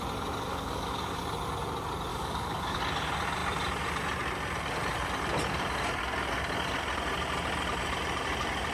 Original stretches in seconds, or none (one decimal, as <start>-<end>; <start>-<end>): 0.0-0.5; 1.2-2.1; 2.8-8.7